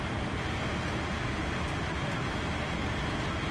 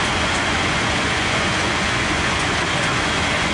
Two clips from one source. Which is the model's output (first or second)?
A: second